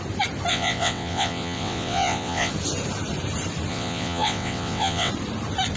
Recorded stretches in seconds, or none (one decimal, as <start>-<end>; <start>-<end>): 0.0-0.5; 2.5-3.7; 5.1-5.8